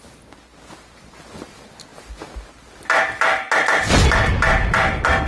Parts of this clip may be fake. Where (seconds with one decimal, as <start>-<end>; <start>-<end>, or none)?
none